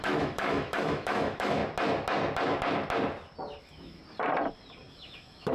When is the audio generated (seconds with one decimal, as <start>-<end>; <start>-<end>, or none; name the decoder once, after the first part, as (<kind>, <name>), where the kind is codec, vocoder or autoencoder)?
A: 0.0-1.6 (autoencoder, DAC-VAE); 3.6-4.0; 4.9-5.5